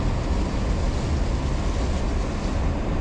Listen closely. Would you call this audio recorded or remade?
recorded